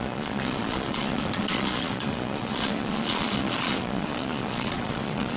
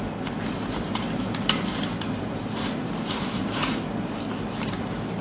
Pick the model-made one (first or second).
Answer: first